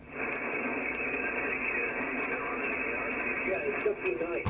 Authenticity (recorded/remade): remade